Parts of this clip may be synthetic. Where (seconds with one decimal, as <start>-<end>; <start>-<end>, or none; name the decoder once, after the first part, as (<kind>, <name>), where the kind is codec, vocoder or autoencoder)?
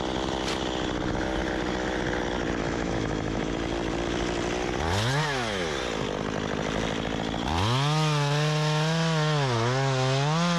2.6-3.5 (autoencoder, DAC-VAE)